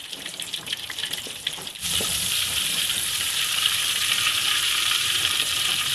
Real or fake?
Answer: fake